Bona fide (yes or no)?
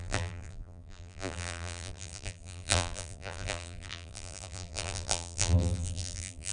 no